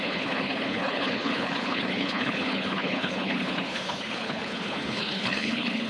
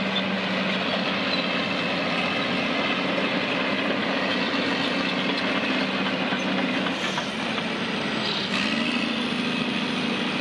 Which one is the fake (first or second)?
first